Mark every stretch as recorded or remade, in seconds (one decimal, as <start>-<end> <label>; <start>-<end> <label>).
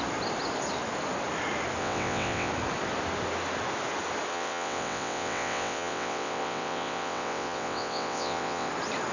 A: 0.0-1.8 recorded; 1.8-2.5 remade; 2.5-4.3 recorded; 4.3-8.7 remade; 8.7-9.1 recorded